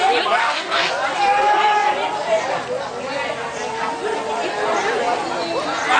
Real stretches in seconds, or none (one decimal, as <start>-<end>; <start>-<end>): 0.0-0.4; 0.9-6.0